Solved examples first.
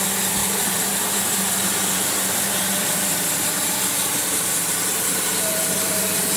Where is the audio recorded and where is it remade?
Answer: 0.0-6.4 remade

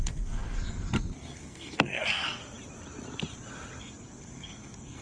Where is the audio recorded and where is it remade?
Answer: 0.0-2.4 remade; 2.4-3.8 recorded; 3.8-5.0 remade

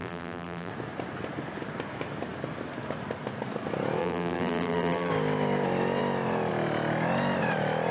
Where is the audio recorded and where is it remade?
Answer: 0.0-0.7 remade; 0.7-4.0 recorded; 4.0-5.1 remade; 5.1-7.9 recorded